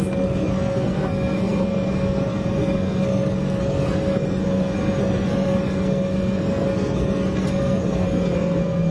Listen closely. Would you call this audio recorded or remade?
remade